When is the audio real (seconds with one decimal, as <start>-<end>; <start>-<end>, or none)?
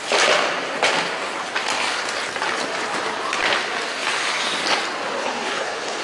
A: 0.0-5.2